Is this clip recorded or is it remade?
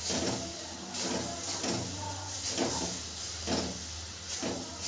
recorded